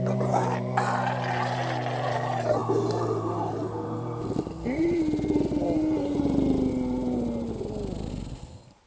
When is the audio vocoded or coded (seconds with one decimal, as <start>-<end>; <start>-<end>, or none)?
none